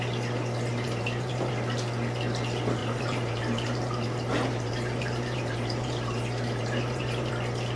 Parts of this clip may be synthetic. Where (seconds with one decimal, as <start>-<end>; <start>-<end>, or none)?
0.7-1.5; 2.8-7.3